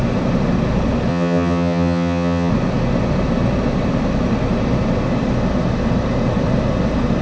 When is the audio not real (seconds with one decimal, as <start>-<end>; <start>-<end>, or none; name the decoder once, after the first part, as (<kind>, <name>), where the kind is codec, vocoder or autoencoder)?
1.1-2.5 (vocoder, HiFi-GAN)